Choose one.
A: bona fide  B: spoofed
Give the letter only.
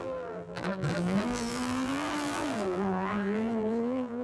B